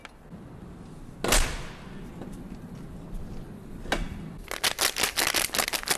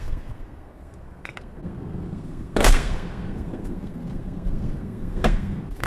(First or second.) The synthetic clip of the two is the second